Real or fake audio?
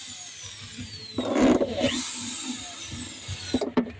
real